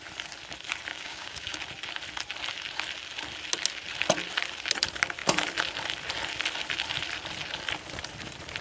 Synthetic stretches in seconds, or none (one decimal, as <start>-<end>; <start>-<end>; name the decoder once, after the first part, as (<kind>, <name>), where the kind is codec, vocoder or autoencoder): 0.9-1.6 (codec, DAC)